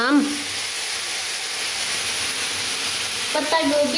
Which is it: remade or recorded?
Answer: recorded